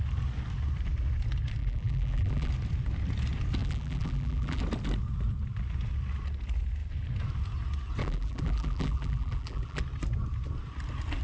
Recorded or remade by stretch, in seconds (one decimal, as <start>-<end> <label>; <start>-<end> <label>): 0.0-1.6 recorded; 1.6-2.5 remade; 2.5-3.6 recorded; 3.6-4.6 remade; 4.6-8.0 recorded; 8.0-9.8 remade; 9.8-11.2 recorded